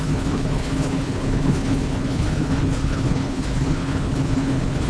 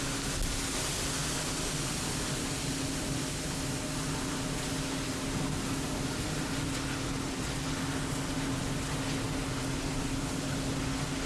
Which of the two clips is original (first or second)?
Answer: second